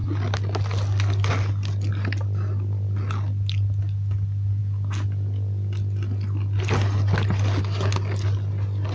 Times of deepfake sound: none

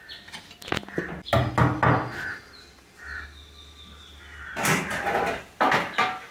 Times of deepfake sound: none

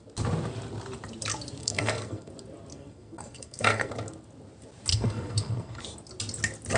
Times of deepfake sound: 1.6-2.3 (codec, SNAC); 2.7-3.9; 4.9-5.8

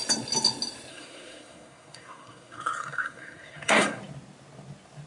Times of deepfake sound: 0.9-4.0 (codec, SNAC)

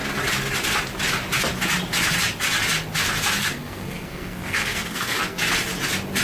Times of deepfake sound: 3.4-5.4 (codec, SNAC)